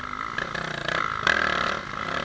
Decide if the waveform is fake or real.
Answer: real